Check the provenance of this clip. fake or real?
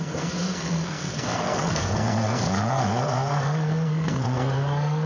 fake